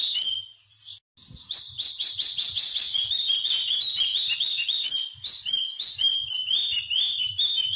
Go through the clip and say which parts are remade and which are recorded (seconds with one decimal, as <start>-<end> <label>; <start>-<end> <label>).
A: 0.0-7.8 recorded